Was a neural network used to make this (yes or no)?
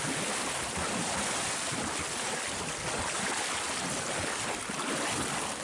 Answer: no